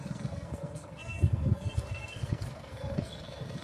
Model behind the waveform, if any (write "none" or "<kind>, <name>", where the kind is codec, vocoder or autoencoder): codec, SNAC